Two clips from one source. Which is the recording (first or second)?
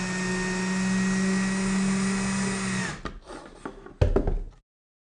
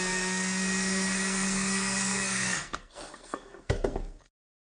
first